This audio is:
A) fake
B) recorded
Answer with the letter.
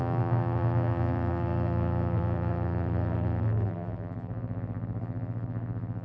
A